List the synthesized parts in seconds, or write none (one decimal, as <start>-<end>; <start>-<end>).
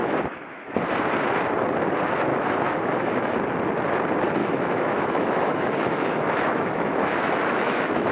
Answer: 0.0-0.8; 2.3-3.3; 4.4-8.1